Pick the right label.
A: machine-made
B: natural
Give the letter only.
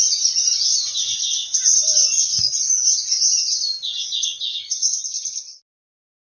B